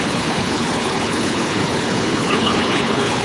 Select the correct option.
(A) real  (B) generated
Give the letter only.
B